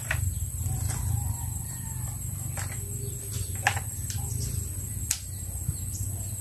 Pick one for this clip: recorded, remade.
recorded